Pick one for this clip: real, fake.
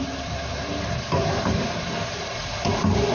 real